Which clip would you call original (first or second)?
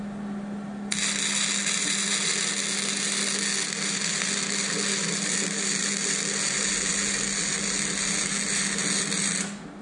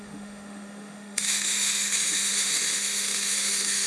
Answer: first